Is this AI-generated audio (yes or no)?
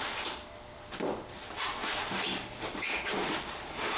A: no